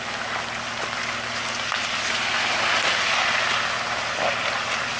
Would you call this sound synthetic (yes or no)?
no